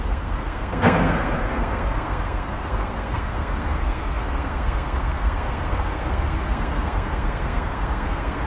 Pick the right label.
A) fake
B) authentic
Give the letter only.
A